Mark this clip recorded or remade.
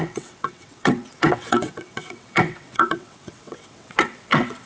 remade